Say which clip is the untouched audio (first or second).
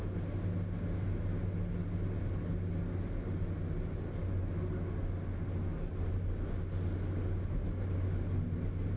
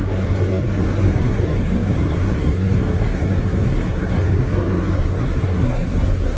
first